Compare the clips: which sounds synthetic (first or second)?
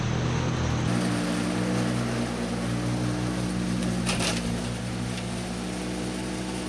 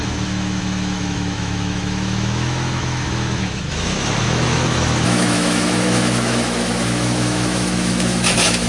second